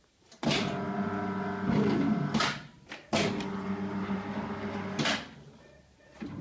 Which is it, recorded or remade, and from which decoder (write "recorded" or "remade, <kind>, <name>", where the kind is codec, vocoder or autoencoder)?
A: recorded